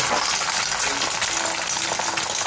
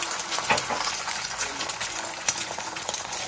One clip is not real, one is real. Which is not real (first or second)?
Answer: second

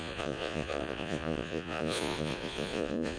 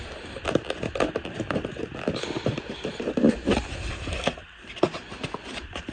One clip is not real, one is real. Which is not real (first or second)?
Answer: first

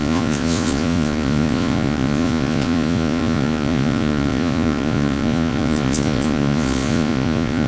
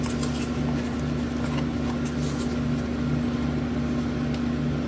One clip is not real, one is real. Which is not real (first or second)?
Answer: first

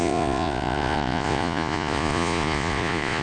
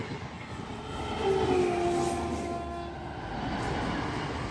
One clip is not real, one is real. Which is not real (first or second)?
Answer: first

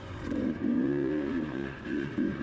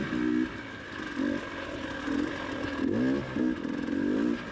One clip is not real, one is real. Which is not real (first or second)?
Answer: first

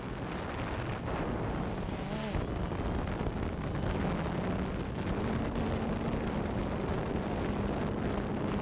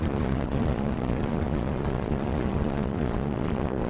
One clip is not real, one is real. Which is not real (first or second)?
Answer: second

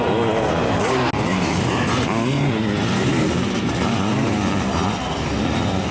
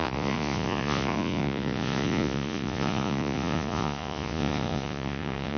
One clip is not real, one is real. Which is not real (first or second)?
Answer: second